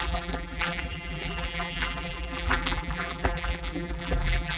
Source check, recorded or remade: remade